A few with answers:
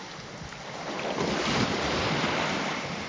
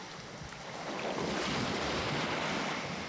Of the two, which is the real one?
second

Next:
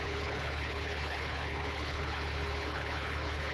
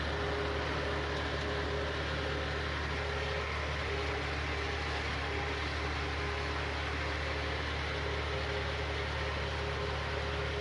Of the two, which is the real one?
second